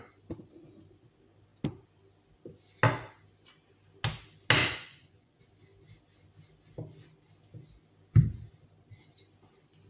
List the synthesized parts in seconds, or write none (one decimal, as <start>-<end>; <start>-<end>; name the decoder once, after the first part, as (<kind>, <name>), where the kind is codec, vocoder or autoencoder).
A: 4.6-5.4 (vocoder, Vocos)